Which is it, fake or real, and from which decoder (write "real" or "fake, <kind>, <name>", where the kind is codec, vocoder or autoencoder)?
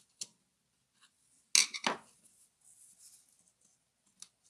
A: real